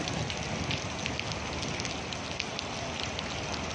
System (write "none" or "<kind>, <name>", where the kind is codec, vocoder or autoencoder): none